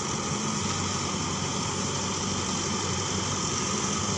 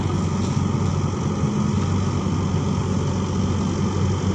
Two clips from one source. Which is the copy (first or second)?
first